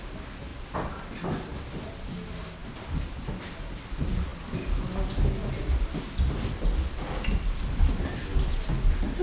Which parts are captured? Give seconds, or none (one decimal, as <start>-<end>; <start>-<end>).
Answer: 0.0-9.2